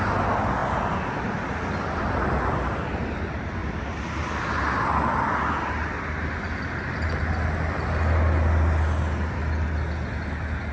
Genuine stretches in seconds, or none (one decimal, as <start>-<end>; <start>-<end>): 0.0-10.7